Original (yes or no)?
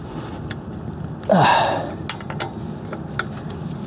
yes